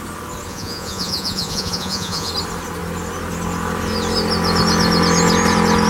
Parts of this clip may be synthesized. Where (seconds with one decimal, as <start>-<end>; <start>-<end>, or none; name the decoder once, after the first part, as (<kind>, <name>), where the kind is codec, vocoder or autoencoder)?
0.5-2.3 (vocoder, Vocos)